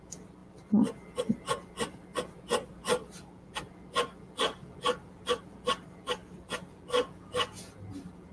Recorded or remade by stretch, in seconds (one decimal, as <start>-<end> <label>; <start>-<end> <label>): 0.0-8.3 recorded